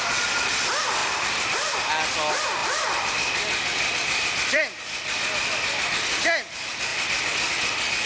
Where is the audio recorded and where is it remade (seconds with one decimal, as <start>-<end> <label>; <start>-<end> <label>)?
0.0-1.0 recorded; 1.0-1.8 remade; 1.8-2.6 recorded; 2.6-4.6 remade; 4.6-6.9 recorded; 6.9-7.5 remade; 7.5-8.1 recorded